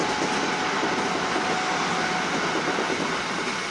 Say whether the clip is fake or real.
real